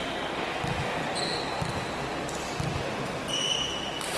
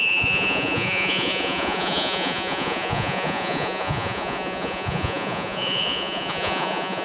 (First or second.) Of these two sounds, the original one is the first